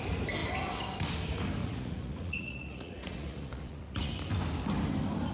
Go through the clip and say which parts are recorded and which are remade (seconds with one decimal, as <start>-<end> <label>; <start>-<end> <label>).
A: 0.0-1.6 recorded; 1.6-4.1 remade; 4.1-5.3 recorded